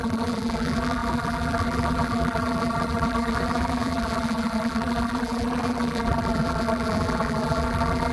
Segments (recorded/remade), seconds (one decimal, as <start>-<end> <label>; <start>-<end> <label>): 0.0-8.1 remade